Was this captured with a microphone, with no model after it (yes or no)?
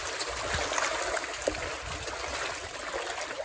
yes